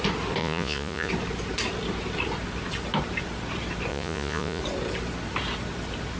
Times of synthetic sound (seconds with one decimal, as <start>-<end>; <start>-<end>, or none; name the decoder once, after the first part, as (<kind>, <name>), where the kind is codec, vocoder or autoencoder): 0.4-1.1 (vocoder, Vocos); 3.9-4.6